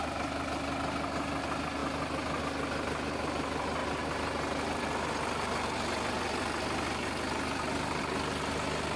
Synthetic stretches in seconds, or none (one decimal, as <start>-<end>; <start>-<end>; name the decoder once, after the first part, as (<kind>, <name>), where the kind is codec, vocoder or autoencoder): none